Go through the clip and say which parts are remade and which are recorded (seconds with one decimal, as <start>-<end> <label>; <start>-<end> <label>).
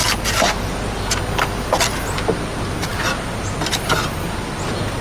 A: 0.0-1.2 remade; 1.2-5.0 recorded